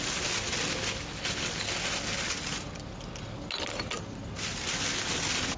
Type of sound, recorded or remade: recorded